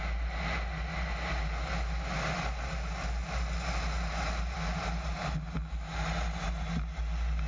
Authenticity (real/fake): real